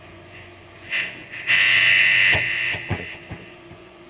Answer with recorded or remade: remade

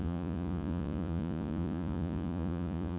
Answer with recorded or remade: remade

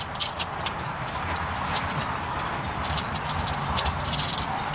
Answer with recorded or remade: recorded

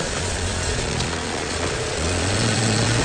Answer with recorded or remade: remade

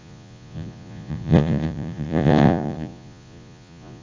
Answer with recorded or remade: remade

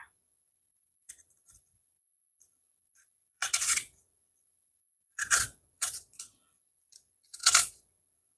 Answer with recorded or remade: remade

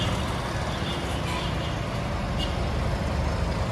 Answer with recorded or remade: recorded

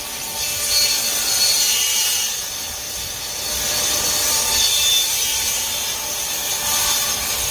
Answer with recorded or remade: recorded